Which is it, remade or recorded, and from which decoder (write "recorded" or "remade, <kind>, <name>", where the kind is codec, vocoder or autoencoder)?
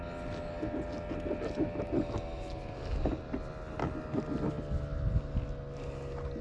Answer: recorded